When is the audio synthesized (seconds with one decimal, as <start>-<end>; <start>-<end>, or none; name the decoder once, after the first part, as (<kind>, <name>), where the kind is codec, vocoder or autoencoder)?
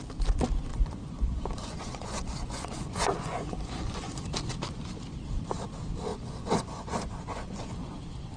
0.7-4.2 (vocoder, Vocos); 6.1-8.0